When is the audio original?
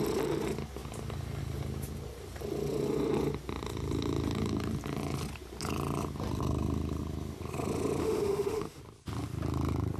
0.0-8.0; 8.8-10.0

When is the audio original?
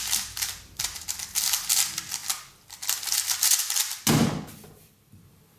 0.0-5.6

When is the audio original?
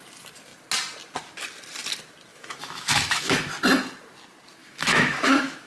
0.0-2.3; 3.5-4.6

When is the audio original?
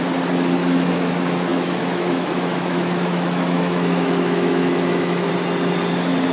0.0-0.6; 1.1-1.5; 5.3-6.3